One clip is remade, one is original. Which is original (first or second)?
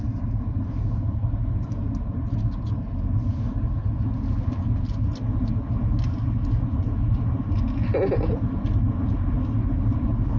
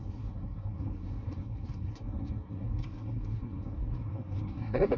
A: first